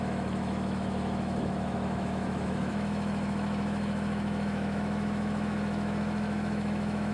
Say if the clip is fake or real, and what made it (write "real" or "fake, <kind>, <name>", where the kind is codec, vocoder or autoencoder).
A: fake, autoencoder, DAC-VAE